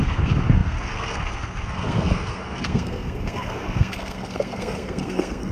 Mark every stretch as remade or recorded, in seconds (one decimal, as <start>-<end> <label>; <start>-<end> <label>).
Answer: 0.0-5.5 remade